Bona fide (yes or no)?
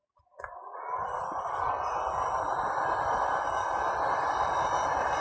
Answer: yes